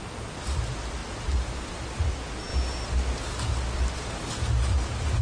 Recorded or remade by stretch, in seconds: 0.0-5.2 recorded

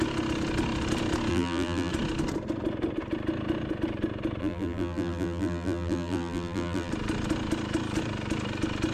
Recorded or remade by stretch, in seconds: 0.0-1.3 recorded; 1.3-1.9 remade; 1.9-4.4 recorded; 4.4-6.9 remade; 6.9-8.9 recorded

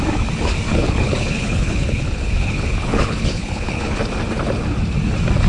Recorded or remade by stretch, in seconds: 0.0-0.7 recorded; 0.7-4.0 remade; 4.0-5.5 recorded

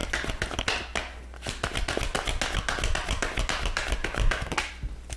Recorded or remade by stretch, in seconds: 0.0-5.2 recorded